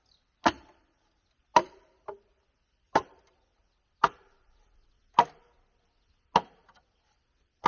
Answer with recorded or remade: recorded